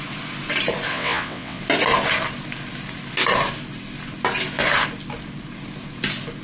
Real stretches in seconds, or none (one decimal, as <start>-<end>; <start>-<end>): 0.0-0.9; 1.6-6.4